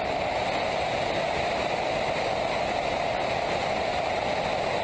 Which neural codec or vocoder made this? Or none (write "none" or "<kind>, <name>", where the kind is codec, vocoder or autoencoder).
none